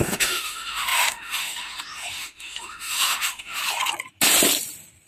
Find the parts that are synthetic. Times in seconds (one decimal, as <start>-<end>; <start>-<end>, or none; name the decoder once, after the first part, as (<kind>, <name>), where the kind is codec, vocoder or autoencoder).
0.0-3.6 (autoencoder, DAC-VAE)